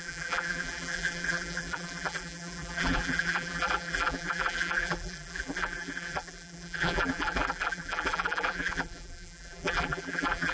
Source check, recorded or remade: remade